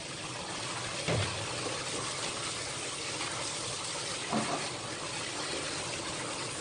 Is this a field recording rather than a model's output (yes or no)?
yes